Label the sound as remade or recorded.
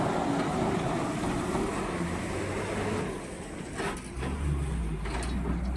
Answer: recorded